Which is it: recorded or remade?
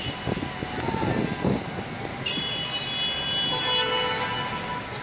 recorded